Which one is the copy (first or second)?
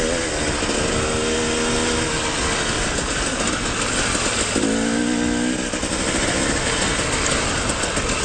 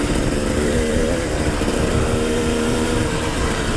second